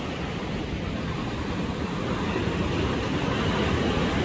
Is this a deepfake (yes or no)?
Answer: no